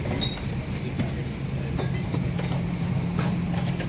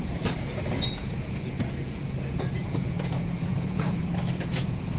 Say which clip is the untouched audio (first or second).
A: first